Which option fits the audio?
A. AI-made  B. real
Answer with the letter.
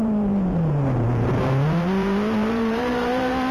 A